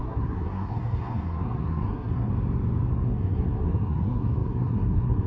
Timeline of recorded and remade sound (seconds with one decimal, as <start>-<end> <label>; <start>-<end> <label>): 0.0-2.3 remade; 2.3-2.9 recorded; 2.9-5.3 remade